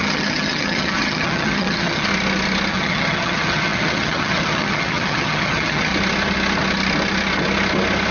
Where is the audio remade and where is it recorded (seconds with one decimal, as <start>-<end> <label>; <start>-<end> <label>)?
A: 0.0-2.1 remade; 2.1-2.7 recorded; 2.7-5.9 remade; 5.9-8.1 recorded